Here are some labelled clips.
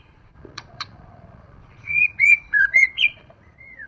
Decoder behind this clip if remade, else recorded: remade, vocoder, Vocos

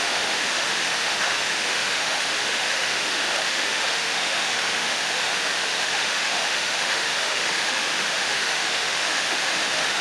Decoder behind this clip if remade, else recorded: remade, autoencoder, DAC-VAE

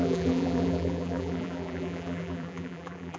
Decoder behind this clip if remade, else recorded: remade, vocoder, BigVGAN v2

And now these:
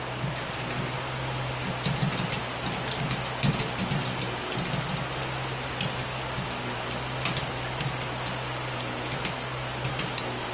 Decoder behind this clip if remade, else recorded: recorded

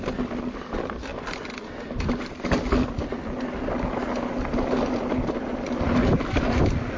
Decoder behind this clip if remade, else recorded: recorded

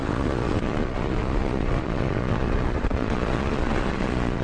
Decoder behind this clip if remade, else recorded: remade, vocoder, Vocos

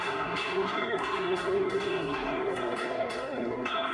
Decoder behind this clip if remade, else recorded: remade, codec, SNAC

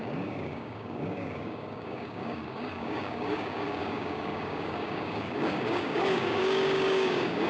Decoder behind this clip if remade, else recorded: remade, codec, DAC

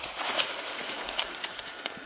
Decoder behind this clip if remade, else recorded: remade, vocoder, Vocos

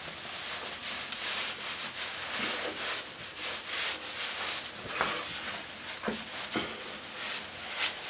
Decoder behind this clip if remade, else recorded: recorded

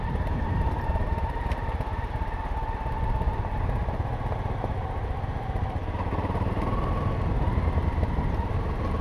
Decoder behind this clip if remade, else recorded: recorded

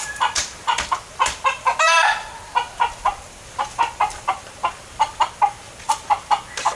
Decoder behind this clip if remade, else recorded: remade, vocoder, BigVGAN v2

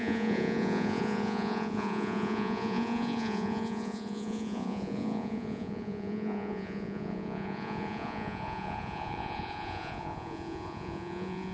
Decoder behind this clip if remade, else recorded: remade, vocoder, Vocos